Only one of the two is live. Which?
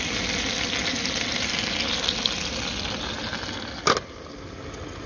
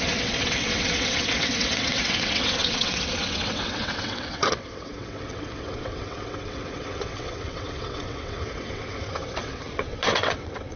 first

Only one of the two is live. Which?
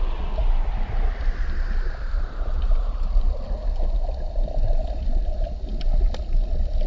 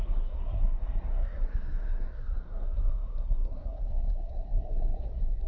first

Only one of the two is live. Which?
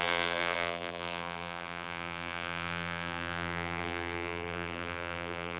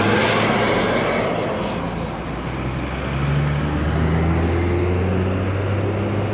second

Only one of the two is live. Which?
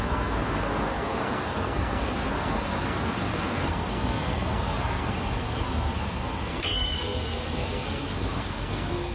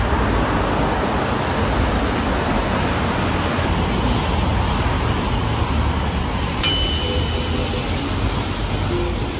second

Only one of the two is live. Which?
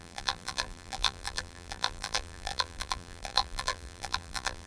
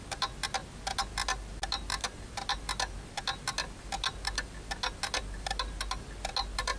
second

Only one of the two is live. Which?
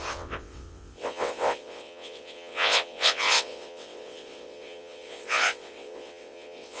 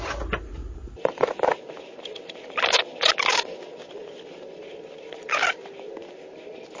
second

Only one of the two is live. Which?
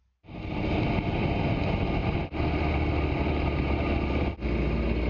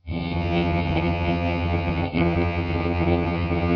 first